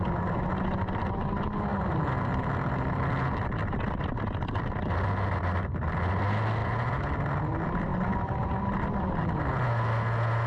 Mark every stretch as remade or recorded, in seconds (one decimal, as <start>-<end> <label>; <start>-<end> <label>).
0.0-10.5 recorded